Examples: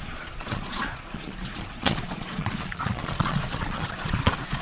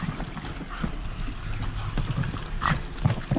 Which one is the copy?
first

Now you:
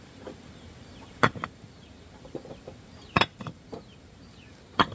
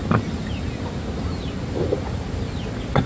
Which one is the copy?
first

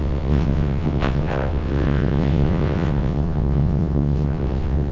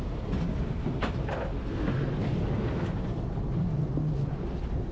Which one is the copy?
first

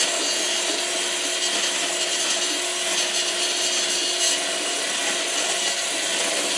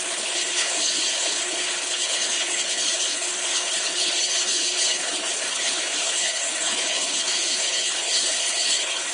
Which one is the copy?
second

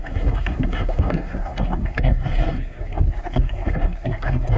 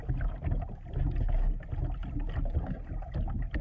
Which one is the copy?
first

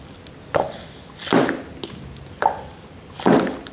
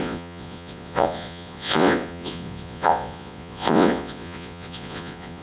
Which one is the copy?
second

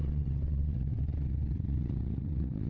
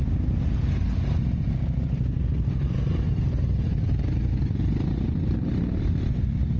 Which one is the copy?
first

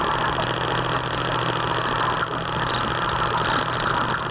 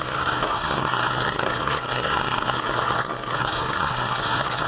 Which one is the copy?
second